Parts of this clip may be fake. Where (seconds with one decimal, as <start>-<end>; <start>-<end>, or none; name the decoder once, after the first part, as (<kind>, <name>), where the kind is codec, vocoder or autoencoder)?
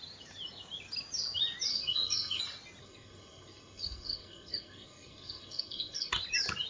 1.7-2.4 (codec, SNAC); 2.8-6.1